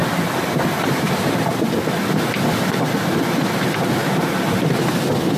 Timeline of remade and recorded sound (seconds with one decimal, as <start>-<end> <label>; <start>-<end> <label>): 0.0-3.2 remade; 3.2-4.0 recorded; 4.0-4.9 remade; 4.9-5.4 recorded